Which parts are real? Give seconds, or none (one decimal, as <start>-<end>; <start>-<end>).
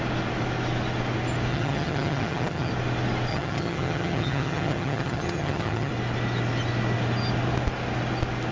0.0-1.5; 2.7-3.3; 5.9-8.5